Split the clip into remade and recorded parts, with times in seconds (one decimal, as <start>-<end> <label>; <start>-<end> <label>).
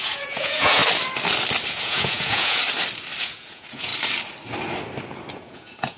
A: 0.0-0.8 remade; 0.8-1.7 recorded; 1.7-2.6 remade; 2.6-3.2 recorded; 3.2-3.9 remade; 3.9-5.3 recorded; 5.3-6.0 remade